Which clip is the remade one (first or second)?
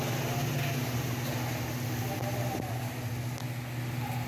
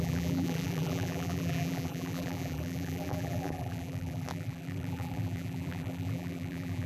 second